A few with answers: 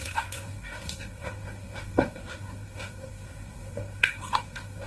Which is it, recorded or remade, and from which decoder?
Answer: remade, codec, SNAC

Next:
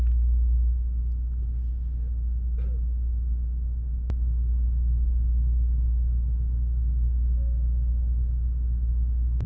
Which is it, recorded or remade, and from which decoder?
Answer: recorded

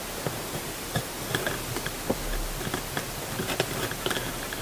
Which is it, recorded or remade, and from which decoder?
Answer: recorded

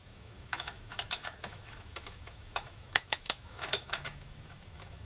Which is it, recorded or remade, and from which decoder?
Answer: remade, autoencoder, DAC-VAE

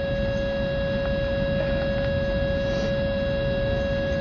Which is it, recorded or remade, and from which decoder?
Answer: recorded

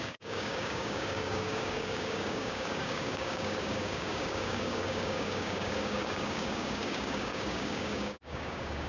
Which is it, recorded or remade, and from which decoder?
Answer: remade, codec, DAC